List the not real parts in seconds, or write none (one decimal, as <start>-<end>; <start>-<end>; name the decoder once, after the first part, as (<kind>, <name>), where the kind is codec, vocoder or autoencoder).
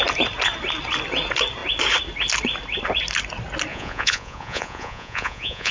3.7-5.7 (vocoder, Vocos)